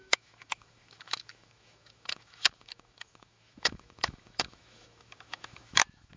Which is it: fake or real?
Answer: fake